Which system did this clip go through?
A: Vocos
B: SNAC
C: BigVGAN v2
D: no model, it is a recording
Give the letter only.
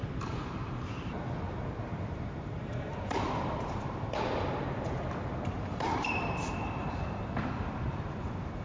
C